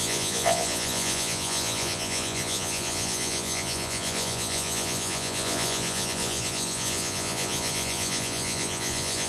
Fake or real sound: fake